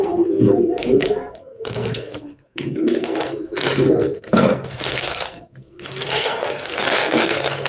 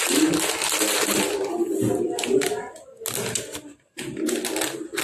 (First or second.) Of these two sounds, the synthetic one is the first